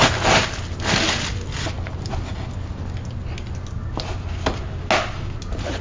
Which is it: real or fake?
real